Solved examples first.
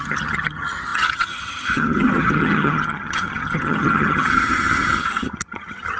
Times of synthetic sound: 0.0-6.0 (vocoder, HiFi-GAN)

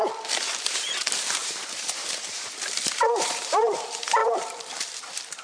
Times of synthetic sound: 0.0-5.4 (vocoder, BigVGAN v2)

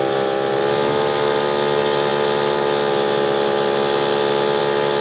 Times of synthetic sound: none

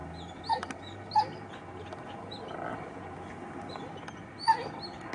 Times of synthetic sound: none

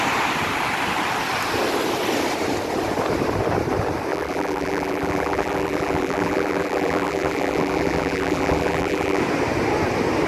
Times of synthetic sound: 4.1-9.2 (vocoder, BigVGAN v2)